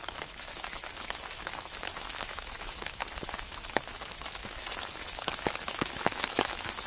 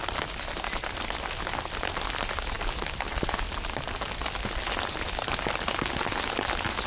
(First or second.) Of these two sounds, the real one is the second